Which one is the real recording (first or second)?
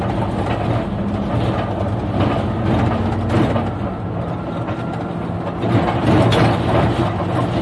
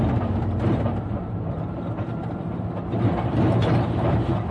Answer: first